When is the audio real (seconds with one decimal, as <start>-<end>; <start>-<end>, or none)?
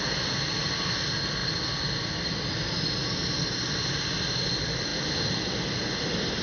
0.0-6.4